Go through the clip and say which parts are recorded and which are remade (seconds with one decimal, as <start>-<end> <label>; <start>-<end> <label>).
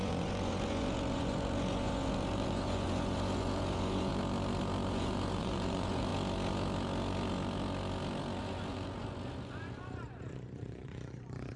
0.0-4.1 remade; 4.1-4.9 recorded; 4.9-6.1 remade; 6.1-8.4 recorded; 8.4-11.6 remade